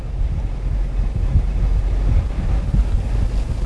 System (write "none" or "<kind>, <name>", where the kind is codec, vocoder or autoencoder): none